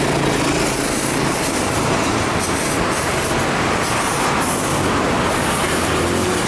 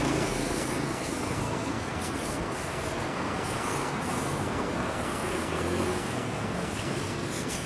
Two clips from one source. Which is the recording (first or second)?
first